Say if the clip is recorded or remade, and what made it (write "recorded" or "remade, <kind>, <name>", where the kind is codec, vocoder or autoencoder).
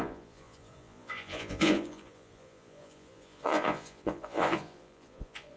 remade, vocoder, Vocos